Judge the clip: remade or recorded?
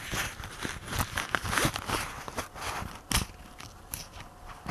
recorded